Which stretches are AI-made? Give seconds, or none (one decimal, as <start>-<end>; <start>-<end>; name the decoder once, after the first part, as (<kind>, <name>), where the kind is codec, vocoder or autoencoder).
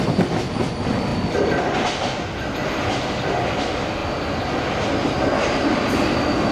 none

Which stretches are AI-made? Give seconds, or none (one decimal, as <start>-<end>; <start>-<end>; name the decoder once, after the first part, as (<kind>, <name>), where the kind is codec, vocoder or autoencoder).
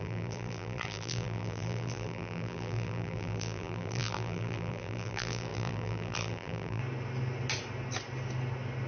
0.0-6.8 (vocoder, BigVGAN v2)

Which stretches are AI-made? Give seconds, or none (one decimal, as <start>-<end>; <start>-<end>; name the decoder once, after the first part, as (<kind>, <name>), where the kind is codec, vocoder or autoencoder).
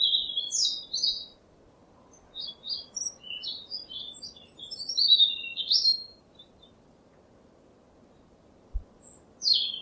none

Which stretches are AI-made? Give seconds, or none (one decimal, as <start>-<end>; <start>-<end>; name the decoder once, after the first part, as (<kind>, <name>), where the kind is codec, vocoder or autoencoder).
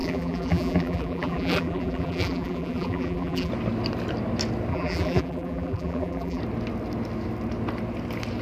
0.0-3.5 (vocoder, BigVGAN v2); 4.7-6.4